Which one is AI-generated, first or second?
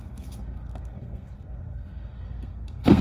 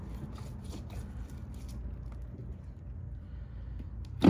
first